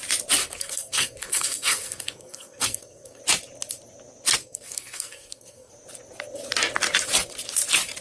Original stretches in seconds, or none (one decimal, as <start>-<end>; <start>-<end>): 0.0-0.4; 3.2-4.4; 5.7-8.0